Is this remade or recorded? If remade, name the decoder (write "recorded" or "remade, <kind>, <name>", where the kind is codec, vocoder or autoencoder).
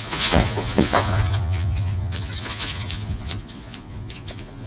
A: remade, vocoder, Vocos